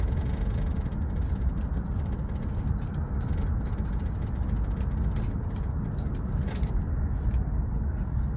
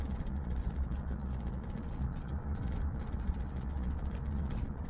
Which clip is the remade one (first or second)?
second